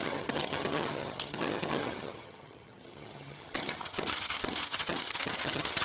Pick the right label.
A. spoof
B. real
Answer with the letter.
A